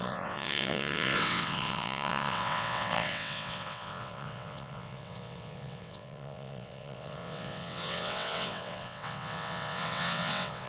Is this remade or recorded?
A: remade